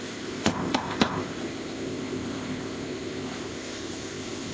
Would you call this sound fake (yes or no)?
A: yes